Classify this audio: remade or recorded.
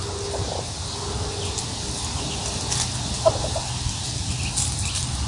recorded